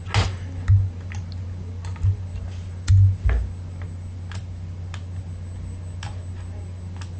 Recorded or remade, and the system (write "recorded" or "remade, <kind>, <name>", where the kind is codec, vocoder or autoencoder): recorded